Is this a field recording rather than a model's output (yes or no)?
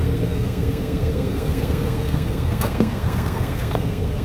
no